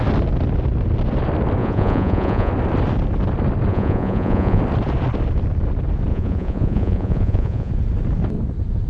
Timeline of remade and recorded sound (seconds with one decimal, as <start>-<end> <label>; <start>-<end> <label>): 0.0-1.6 recorded; 1.6-2.5 remade; 2.5-3.7 recorded; 3.7-4.6 remade; 4.6-6.1 recorded; 6.1-7.7 remade; 7.7-8.9 recorded